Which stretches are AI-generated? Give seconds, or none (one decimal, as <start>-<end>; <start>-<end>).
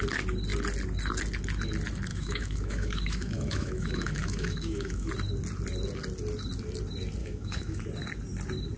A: 2.1-5.1; 7.2-7.8